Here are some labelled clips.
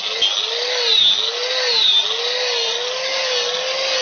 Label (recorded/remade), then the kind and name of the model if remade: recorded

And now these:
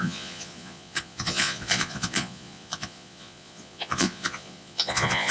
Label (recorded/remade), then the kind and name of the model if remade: remade, vocoder, Vocos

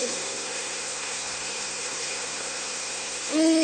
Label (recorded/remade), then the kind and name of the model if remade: remade, codec, SNAC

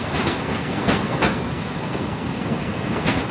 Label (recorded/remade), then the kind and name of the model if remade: remade, codec, SNAC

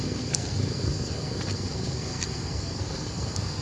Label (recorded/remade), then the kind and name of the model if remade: remade, codec, SNAC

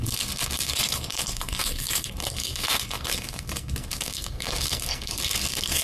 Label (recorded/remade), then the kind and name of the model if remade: remade, codec, SNAC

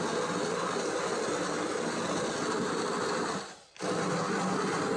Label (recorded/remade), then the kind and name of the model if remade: recorded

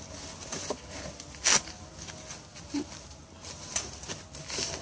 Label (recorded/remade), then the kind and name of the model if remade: recorded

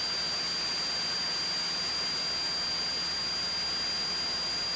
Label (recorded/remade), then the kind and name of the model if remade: recorded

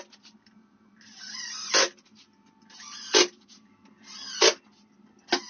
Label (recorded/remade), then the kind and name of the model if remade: recorded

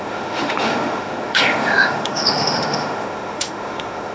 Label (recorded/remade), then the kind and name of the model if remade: remade, autoencoder, DAC-VAE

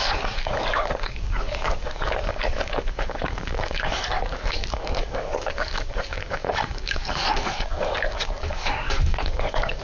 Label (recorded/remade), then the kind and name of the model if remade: remade, codec, DAC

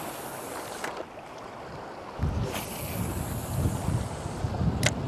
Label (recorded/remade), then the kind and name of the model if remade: recorded